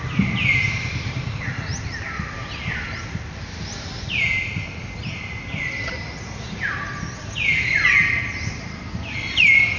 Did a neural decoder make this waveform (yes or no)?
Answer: no